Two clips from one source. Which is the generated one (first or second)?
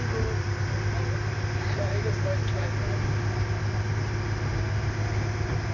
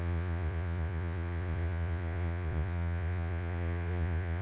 second